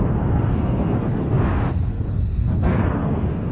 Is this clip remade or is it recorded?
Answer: remade